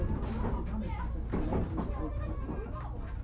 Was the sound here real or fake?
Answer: real